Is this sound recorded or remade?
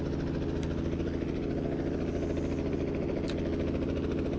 recorded